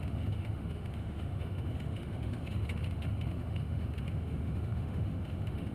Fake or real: fake